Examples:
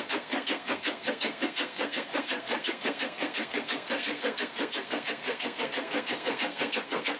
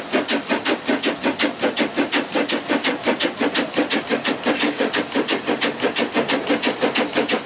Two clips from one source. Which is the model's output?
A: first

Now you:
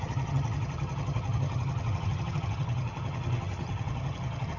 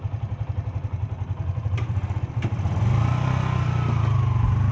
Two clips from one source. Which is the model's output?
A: first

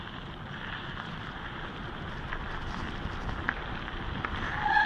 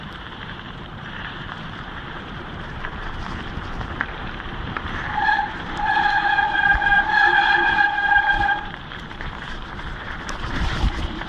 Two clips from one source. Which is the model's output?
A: second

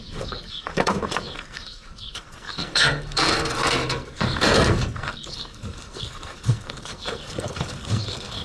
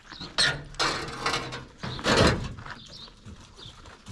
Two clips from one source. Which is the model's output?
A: first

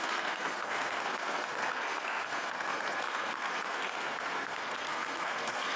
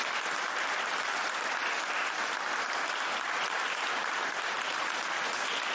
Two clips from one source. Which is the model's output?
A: first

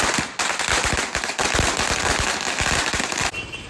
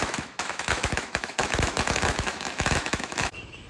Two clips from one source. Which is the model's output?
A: second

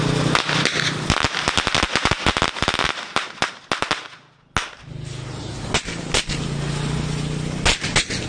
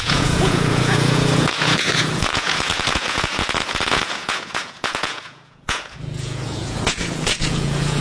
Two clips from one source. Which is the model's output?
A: second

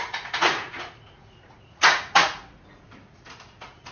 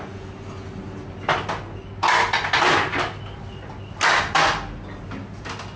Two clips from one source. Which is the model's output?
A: first